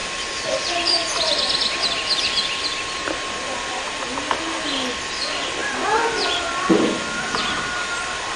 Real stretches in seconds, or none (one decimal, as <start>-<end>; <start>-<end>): 0.0-8.4